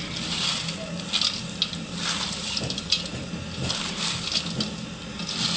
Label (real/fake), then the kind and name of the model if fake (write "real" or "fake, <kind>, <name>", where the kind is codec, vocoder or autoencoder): real